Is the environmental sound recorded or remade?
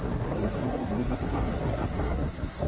remade